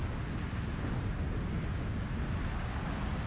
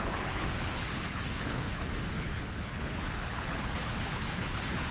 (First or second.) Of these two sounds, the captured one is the first